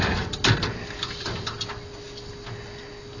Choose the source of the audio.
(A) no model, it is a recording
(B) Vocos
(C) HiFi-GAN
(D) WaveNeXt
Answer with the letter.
A